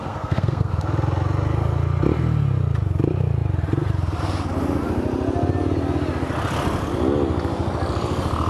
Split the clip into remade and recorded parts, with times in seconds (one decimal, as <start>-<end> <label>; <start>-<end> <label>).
0.0-0.7 remade; 0.7-8.5 recorded